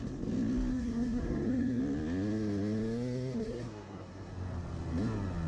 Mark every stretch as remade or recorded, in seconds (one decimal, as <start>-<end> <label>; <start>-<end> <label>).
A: 0.0-0.7 recorded; 0.7-1.8 remade; 1.8-3.4 recorded; 3.4-4.3 remade; 4.3-5.5 recorded

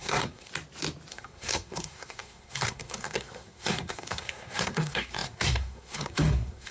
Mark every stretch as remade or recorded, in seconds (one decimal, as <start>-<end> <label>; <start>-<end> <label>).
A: 0.0-0.5 remade; 0.5-1.1 recorded; 1.1-6.7 remade

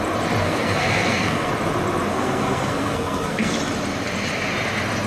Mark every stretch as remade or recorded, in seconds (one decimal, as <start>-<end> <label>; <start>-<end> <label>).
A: 0.0-0.4 recorded; 0.4-1.5 remade; 1.5-2.1 recorded; 2.1-3.6 remade; 3.6-5.1 recorded

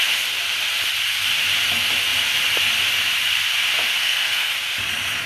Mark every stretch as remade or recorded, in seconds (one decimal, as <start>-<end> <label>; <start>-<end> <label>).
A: 0.0-4.0 recorded; 4.0-4.5 remade; 4.5-5.3 recorded

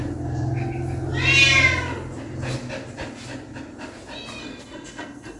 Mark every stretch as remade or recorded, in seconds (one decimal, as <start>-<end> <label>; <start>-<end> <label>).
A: 0.0-4.4 recorded; 4.4-5.4 remade

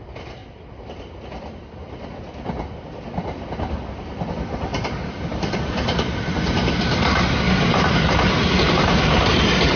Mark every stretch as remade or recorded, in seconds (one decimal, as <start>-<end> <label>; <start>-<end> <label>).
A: 0.0-9.8 recorded

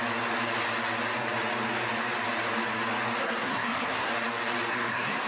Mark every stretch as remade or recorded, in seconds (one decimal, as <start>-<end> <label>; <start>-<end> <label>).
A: 0.0-3.2 recorded; 3.2-4.1 remade; 4.1-4.7 recorded; 4.7-5.3 remade